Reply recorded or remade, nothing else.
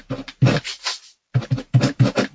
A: recorded